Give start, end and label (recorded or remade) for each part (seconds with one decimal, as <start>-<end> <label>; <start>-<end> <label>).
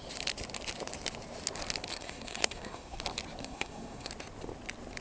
0.0-1.9 recorded; 1.9-3.0 remade; 3.0-3.4 recorded; 3.4-4.1 remade; 4.1-5.0 recorded